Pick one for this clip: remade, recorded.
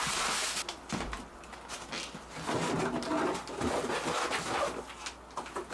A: recorded